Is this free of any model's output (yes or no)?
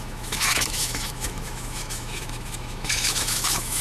no